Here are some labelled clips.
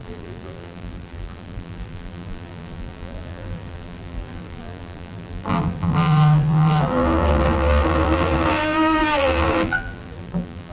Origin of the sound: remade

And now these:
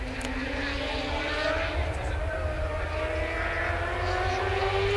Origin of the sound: recorded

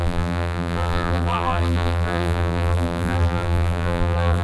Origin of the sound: remade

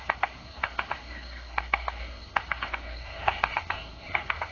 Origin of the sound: remade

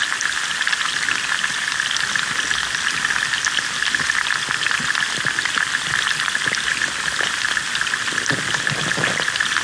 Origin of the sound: recorded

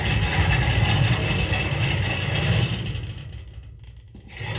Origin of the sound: recorded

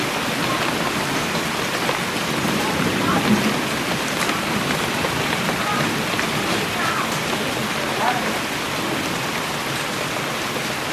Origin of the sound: recorded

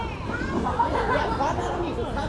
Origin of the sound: recorded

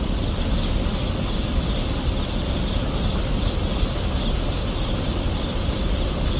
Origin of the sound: recorded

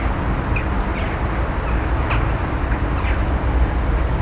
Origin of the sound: recorded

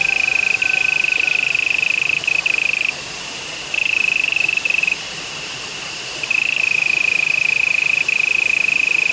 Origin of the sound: recorded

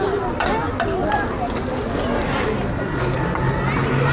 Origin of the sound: recorded